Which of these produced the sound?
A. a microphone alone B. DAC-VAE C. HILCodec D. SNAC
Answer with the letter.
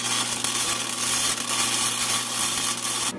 A